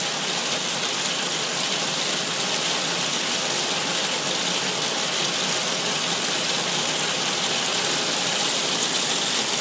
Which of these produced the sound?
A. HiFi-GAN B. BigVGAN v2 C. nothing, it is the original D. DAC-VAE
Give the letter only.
C